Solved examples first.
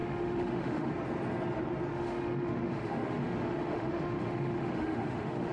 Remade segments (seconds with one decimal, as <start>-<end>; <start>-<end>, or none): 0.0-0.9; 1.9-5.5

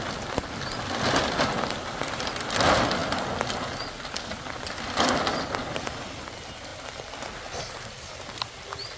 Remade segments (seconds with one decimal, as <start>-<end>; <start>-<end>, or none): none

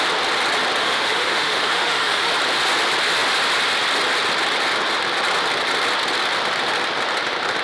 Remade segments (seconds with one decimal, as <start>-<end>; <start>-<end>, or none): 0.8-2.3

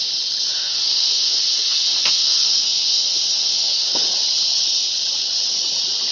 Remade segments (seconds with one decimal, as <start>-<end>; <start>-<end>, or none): 0.6-3.9